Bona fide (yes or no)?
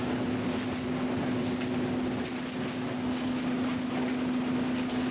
yes